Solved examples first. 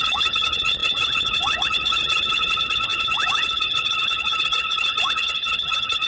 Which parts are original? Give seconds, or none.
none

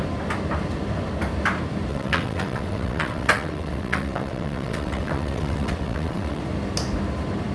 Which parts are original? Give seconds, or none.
0.0-1.9; 6.4-7.5

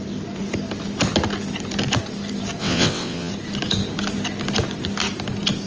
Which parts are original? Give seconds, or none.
0.0-2.6; 3.3-5.7

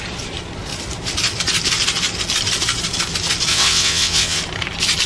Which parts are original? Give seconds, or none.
0.0-3.5; 4.4-5.1

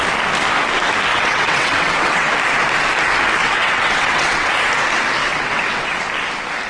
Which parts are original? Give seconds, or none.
0.0-1.1; 2.3-3.4; 4.5-5.2; 6.0-6.7